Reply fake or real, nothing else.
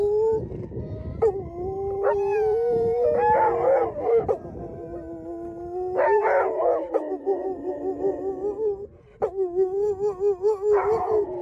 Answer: real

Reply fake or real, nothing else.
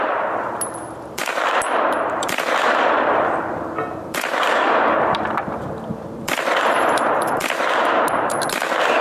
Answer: fake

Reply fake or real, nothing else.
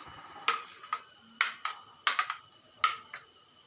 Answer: real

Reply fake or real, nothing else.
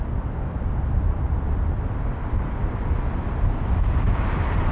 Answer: real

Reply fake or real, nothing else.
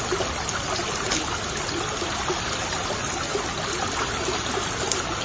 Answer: real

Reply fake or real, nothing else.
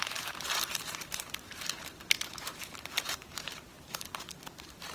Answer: fake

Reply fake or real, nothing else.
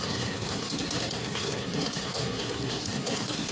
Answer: fake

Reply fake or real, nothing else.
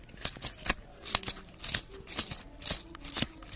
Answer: real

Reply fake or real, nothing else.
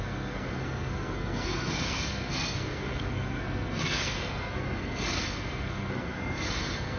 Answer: fake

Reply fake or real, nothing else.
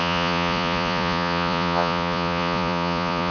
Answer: fake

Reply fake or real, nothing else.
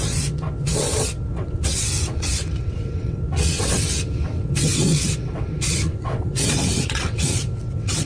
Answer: fake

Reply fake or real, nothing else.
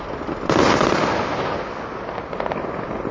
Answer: real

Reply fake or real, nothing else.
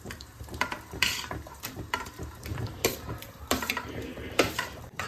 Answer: fake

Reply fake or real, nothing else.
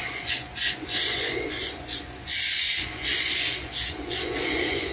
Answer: fake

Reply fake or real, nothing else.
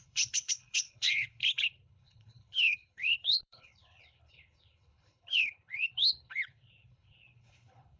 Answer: fake